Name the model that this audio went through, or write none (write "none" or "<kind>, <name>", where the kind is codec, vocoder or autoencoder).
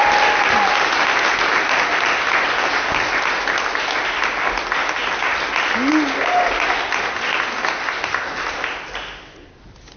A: none